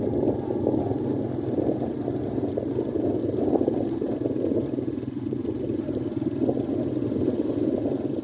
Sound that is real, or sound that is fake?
real